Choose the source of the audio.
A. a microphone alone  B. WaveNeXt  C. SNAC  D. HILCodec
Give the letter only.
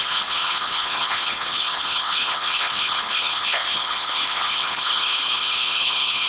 D